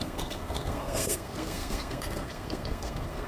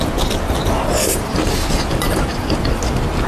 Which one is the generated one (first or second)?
first